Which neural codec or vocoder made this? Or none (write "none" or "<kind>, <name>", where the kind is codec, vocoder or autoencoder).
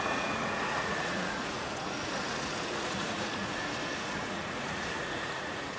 vocoder, Vocos